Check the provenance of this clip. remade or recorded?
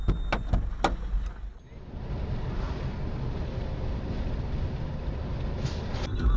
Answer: recorded